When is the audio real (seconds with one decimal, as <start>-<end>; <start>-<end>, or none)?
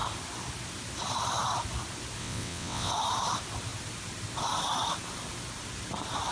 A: 0.0-2.2; 2.9-6.3